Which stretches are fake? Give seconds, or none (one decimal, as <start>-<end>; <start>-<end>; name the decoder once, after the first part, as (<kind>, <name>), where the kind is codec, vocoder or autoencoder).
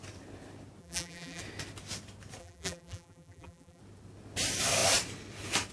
0.8-1.4 (vocoder, BigVGAN v2); 2.4-3.8